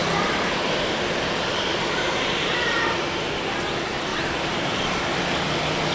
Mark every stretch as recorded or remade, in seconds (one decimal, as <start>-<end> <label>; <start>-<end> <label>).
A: 0.0-3.0 remade; 3.0-4.1 recorded; 4.1-5.1 remade; 5.1-5.9 recorded